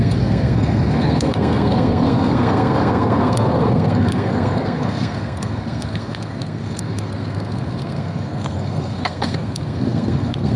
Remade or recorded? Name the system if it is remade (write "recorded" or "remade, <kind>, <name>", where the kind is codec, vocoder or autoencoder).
remade, codec, SNAC